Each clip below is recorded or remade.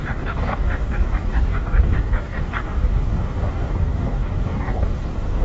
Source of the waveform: remade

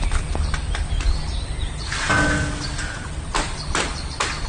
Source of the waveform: recorded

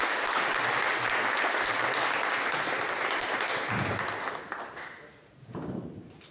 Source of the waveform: recorded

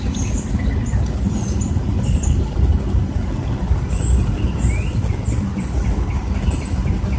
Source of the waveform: recorded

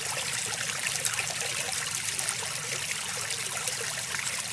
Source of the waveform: recorded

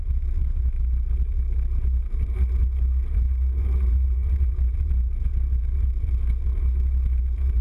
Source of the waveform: recorded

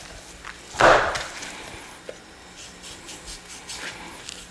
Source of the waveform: recorded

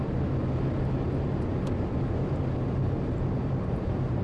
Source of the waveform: recorded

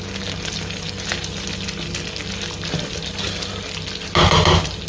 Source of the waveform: recorded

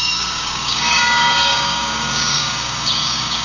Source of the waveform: remade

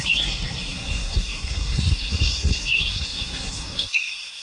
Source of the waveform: remade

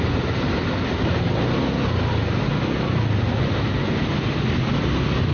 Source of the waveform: recorded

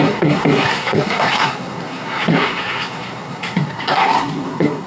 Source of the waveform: remade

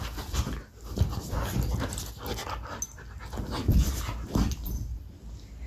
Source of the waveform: recorded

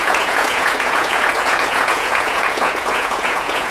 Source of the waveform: remade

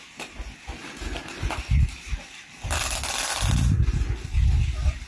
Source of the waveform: recorded